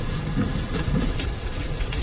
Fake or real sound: fake